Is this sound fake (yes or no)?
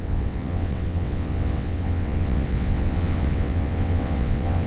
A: yes